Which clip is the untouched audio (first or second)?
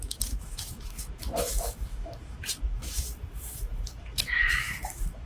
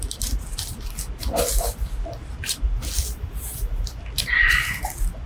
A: second